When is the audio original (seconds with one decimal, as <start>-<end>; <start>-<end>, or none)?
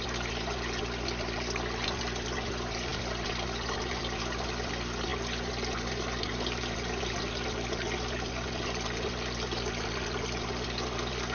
0.0-11.3